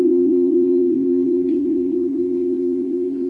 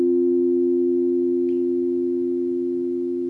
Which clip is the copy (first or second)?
first